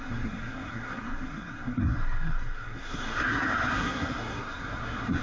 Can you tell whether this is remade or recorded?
remade